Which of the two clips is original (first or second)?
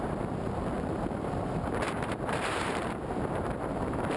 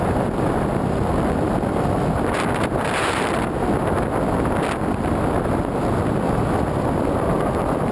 second